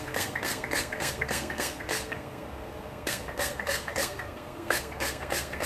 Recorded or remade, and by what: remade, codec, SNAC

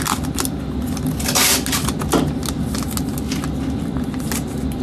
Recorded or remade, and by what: recorded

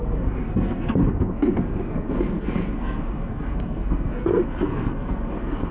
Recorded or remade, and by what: remade, codec, SNAC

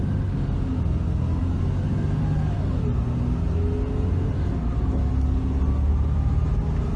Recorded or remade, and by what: recorded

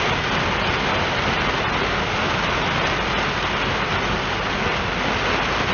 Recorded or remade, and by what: recorded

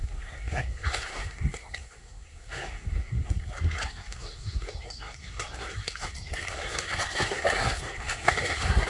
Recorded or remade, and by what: remade, codec, SNAC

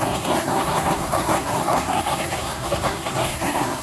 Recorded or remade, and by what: remade, codec, SNAC